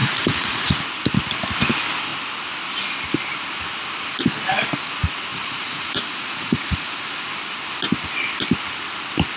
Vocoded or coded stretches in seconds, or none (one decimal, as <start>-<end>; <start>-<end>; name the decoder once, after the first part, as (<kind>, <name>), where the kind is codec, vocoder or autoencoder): 0.0-0.8 (vocoder, Vocos); 5.3-7.3